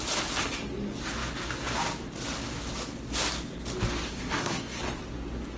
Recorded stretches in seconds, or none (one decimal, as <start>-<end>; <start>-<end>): 0.0-4.1; 4.8-5.6